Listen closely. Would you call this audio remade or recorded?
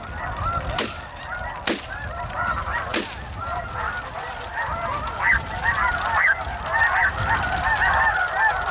recorded